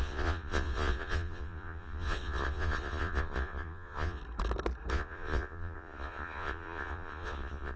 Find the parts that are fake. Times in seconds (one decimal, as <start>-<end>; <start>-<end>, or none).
0.0-4.2; 4.9-7.8